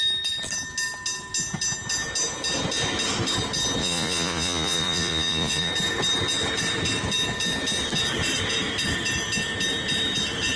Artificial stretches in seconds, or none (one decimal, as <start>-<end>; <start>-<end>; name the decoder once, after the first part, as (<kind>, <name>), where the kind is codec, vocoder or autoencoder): 3.8-5.7 (vocoder, Vocos)